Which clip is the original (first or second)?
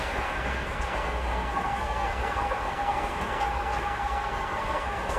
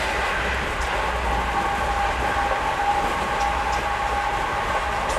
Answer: second